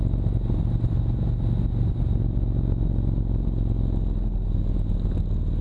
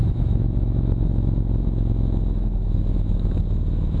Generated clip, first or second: second